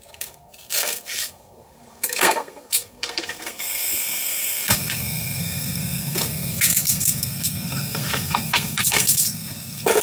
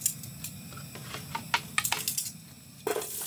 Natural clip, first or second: second